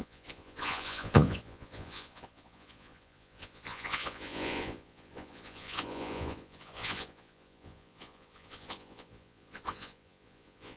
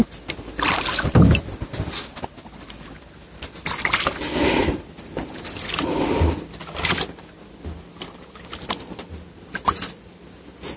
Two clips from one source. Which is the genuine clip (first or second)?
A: second